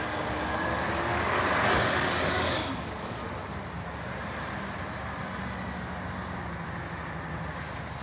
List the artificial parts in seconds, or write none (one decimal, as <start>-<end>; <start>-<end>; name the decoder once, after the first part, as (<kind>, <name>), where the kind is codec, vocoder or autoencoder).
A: 0.0-3.2 (codec, DAC)